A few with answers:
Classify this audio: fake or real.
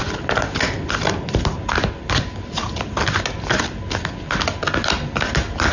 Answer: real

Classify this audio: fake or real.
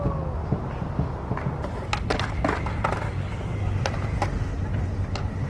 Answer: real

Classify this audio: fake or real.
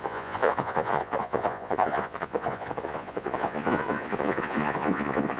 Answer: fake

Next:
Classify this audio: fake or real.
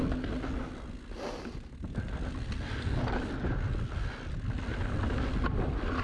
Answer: real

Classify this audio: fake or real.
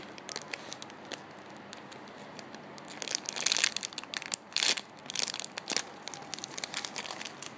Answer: real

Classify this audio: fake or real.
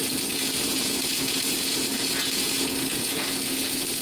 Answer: fake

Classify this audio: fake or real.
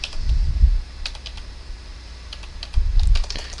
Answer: fake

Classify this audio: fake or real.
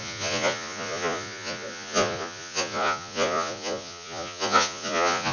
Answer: fake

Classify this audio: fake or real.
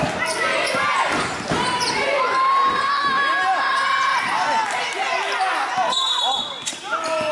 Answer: real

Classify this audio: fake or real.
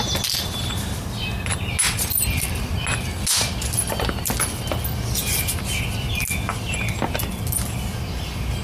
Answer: real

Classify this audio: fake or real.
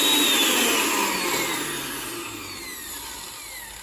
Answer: real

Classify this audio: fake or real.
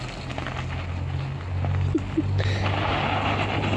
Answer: real